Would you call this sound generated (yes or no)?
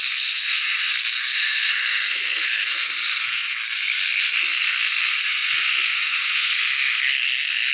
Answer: yes